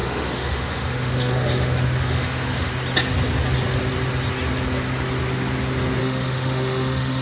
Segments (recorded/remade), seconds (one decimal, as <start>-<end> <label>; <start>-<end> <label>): 0.0-2.7 remade; 2.7-6.0 recorded; 6.0-7.2 remade